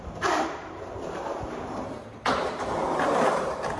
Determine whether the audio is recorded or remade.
remade